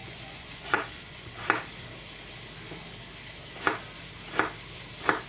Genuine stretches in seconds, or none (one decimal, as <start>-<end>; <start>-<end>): 1.3-5.3